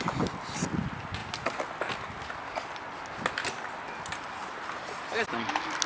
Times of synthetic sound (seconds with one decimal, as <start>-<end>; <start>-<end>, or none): none